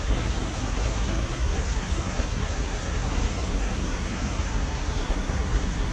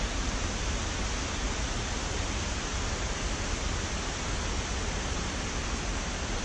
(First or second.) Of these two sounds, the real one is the second